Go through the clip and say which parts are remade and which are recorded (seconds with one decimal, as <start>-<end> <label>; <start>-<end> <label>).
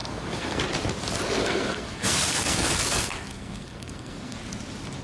0.0-0.6 remade; 0.6-1.4 recorded; 1.4-4.4 remade; 4.4-5.0 recorded